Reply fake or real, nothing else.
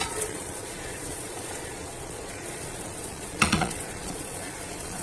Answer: fake